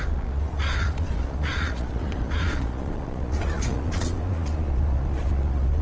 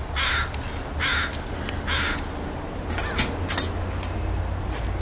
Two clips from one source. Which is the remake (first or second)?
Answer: first